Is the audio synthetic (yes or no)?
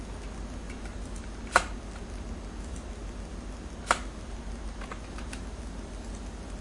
no